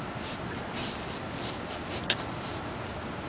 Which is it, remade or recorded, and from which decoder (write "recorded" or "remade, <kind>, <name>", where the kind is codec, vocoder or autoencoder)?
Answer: recorded